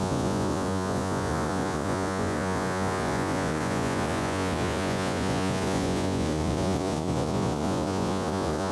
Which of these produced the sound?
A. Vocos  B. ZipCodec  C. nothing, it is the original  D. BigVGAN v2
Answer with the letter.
A